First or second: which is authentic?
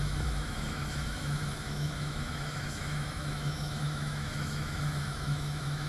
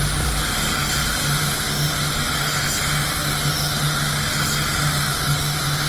second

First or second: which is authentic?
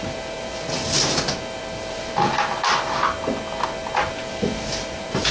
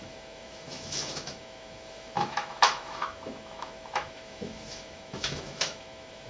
first